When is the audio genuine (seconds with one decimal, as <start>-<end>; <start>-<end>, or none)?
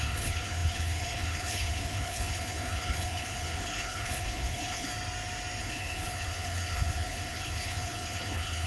4.9-5.6